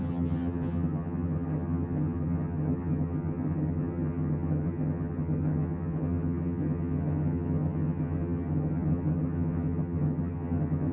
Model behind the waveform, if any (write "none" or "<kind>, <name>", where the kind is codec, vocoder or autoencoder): vocoder, HiFi-GAN